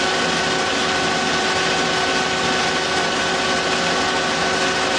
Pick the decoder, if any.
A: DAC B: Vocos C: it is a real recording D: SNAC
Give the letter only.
C